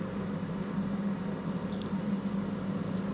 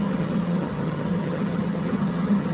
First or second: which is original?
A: first